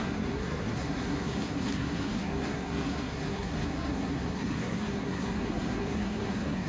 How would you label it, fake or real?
fake